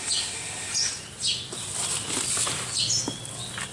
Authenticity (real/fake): real